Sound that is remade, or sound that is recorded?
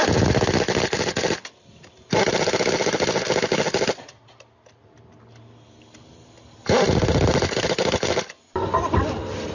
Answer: recorded